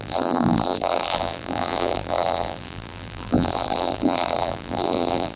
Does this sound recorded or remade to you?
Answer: remade